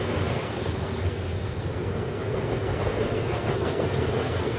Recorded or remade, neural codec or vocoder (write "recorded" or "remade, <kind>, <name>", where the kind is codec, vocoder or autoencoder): remade, codec, SNAC